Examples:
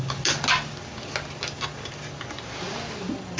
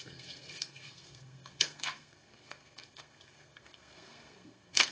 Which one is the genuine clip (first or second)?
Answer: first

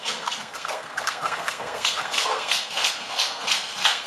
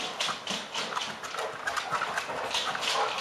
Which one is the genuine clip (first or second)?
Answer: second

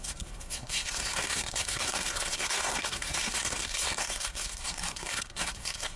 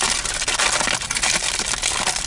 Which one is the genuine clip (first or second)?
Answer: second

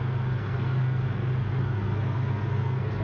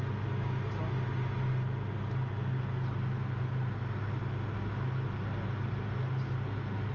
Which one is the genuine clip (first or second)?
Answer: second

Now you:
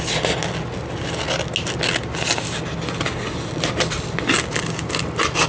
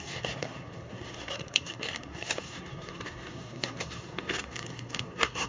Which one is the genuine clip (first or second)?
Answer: first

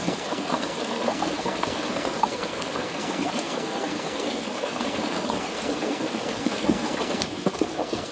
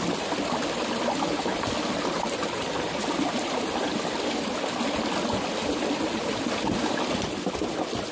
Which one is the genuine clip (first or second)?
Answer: second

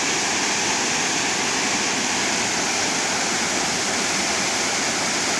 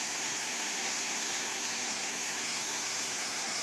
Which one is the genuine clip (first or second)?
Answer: first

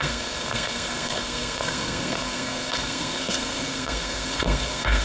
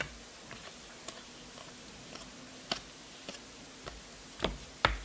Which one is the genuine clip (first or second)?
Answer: second